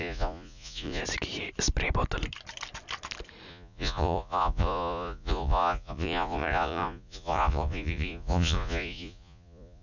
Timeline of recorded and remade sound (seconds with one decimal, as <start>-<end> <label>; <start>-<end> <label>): 0.0-1.0 remade; 1.0-3.5 recorded; 3.5-9.8 remade